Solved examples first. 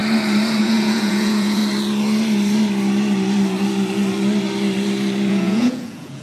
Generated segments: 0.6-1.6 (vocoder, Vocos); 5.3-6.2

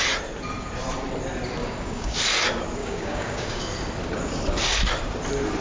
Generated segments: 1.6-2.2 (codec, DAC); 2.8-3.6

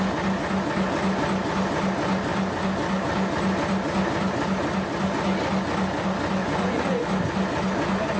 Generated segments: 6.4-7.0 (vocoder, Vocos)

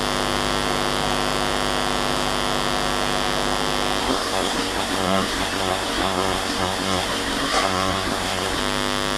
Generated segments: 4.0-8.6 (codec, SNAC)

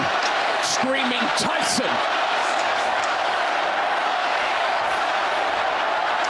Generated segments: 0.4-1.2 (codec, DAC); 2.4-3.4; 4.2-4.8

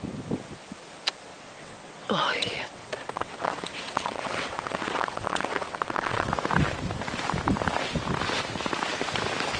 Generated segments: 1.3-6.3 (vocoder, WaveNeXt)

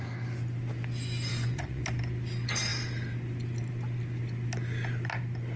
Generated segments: 1.3-1.8 (vocoder, Vocos)